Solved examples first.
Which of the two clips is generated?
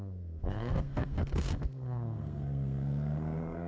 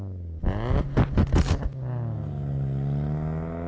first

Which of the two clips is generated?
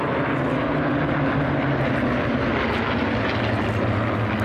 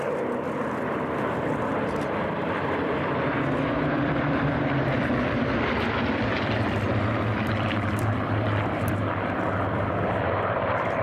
second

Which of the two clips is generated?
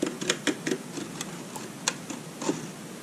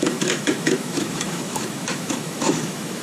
second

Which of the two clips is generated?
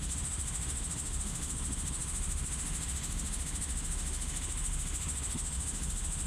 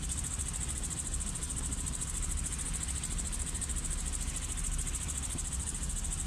first